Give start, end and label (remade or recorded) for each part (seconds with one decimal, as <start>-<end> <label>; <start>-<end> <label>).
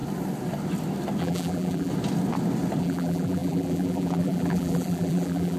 0.0-1.2 recorded; 1.2-1.9 remade; 1.9-2.8 recorded; 2.8-5.6 remade